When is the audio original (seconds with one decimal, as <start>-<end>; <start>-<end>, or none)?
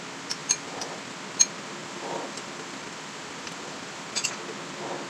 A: 0.0-0.4; 1.0-1.8; 4.3-5.1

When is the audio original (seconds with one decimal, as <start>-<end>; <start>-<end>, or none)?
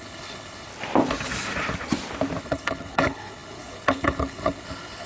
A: 0.7-2.4